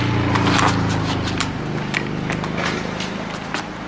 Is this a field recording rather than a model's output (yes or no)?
yes